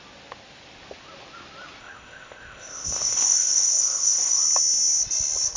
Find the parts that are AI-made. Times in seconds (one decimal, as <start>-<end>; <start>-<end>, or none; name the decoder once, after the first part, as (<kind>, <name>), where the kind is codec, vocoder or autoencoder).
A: 1.8-4.4 (codec, ZipCodec)